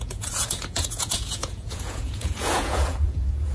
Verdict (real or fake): fake